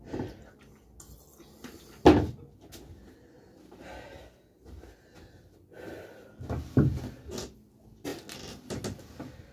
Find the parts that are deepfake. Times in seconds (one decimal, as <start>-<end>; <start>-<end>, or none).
none

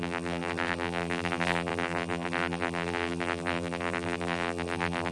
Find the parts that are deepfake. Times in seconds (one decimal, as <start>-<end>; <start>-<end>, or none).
0.0-5.1

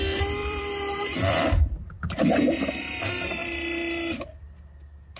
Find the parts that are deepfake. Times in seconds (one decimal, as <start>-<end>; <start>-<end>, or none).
0.4-2.8; 3.4-4.6

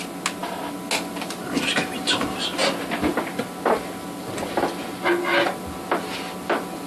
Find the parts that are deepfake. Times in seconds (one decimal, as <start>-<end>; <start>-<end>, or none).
none

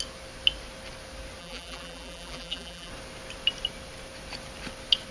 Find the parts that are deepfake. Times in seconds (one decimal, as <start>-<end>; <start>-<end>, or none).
1.4-2.9

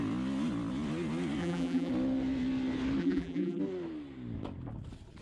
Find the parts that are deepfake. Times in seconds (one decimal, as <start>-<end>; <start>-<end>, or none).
1.4-1.9; 3.0-3.6

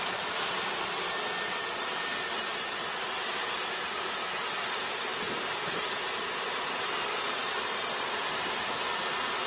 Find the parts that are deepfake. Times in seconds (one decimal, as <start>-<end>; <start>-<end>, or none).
none